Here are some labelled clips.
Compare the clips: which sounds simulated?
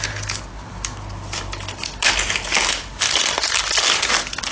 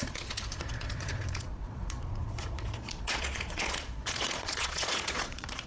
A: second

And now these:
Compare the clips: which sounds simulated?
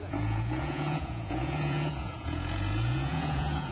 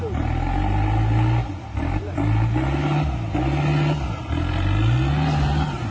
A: first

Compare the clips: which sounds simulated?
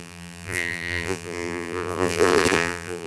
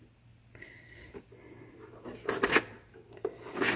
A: first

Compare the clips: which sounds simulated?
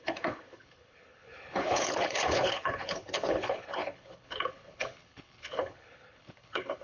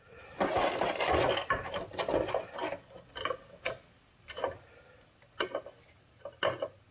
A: first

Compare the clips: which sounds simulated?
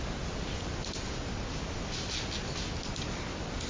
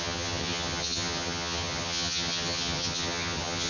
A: second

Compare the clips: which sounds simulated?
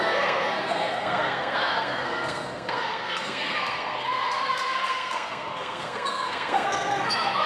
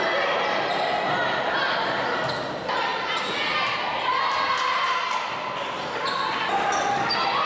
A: first